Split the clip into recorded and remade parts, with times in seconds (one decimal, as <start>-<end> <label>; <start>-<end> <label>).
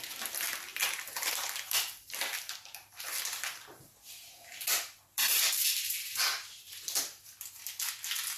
0.0-0.7 recorded; 0.7-3.8 remade; 3.8-5.3 recorded; 5.3-7.0 remade; 7.0-8.4 recorded